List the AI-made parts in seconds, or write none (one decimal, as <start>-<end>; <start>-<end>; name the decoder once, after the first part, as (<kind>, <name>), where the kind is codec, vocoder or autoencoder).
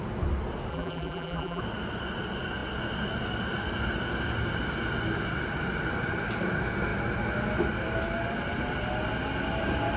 0.7-1.6 (vocoder, BigVGAN v2)